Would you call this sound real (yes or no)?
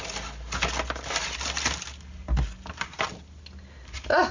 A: yes